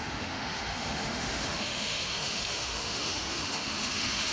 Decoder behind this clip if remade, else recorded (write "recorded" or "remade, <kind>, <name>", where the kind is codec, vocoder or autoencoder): remade, autoencoder, DAC-VAE